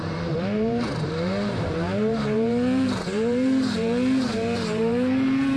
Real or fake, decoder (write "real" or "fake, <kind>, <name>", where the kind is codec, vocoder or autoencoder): fake, vocoder, BigVGAN v2